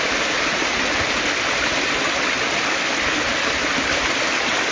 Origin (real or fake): real